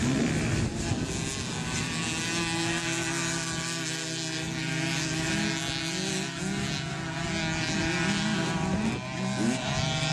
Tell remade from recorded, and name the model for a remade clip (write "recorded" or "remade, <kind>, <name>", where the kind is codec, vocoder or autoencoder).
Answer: recorded